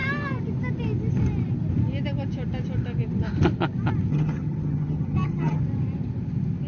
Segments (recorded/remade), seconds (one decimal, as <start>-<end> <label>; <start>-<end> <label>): 0.0-4.1 recorded; 4.1-5.6 remade; 5.6-6.7 recorded